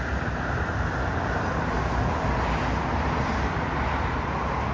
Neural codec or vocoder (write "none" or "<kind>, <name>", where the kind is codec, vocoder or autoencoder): none